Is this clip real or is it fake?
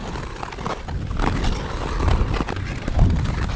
real